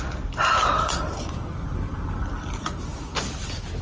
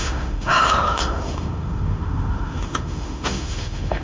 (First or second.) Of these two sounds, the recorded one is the first